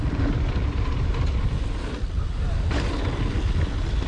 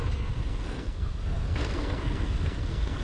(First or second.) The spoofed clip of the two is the second